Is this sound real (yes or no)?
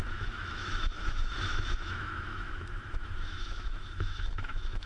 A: no